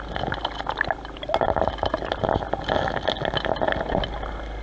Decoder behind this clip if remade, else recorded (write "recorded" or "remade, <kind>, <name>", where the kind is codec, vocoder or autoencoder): recorded